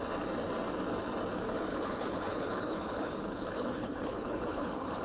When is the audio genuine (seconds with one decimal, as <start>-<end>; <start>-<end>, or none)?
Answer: 0.0-1.7